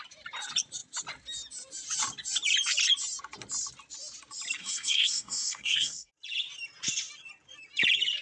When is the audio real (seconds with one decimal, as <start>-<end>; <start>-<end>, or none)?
0.0-4.6; 6.1-8.2